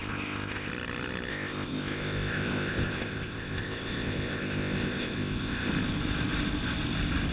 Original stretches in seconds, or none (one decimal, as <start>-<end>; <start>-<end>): 0.7-1.3; 5.7-7.3